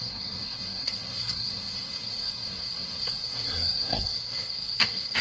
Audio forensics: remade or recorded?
remade